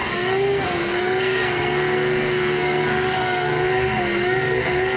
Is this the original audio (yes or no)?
no